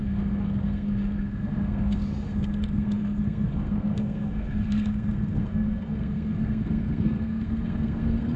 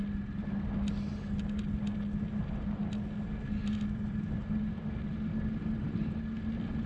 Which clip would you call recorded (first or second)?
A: second